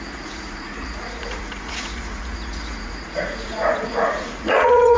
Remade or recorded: remade